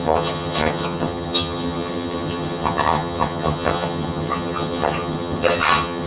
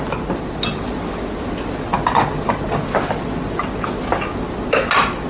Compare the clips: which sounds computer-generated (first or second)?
first